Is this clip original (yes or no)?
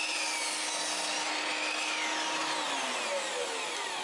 yes